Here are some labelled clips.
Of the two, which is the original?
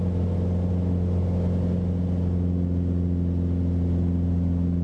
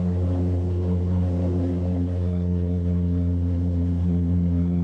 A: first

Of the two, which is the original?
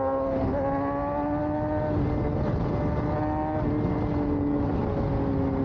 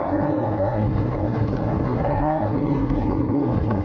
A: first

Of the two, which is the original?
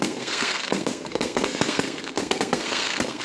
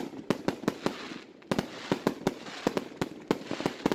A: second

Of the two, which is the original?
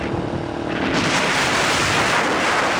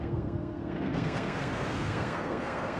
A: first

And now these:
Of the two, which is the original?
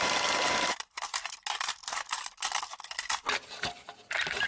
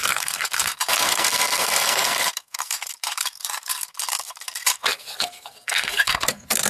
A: first